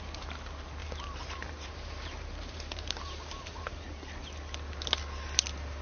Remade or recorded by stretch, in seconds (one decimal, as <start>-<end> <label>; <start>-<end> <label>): 0.0-0.8 recorded; 0.8-4.2 remade; 4.2-5.8 recorded